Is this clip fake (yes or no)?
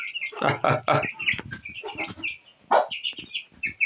no